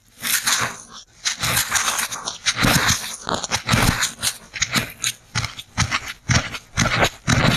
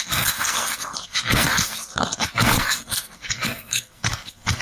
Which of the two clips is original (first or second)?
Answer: first